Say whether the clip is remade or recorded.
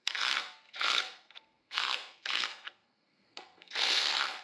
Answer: remade